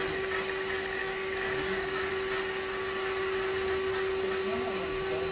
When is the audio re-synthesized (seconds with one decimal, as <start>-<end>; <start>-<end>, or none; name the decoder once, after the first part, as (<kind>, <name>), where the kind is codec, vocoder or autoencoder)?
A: 1.0-2.1 (codec, DAC)